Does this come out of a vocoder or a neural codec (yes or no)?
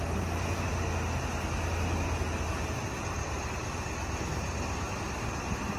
no